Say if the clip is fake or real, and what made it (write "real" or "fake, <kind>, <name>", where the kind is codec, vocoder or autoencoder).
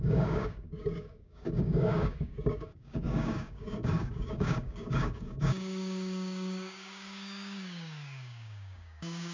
fake, codec, DAC